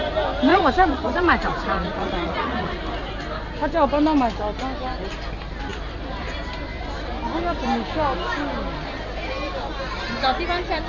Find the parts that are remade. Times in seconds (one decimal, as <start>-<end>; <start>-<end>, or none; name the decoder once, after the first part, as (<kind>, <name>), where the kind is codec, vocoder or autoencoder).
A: 0.5-2.8 (vocoder, Vocos)